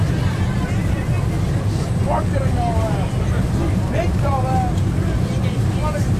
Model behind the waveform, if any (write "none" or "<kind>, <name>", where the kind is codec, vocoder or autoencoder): none